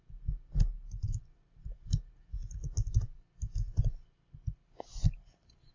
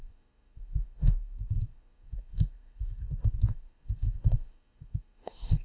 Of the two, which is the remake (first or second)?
second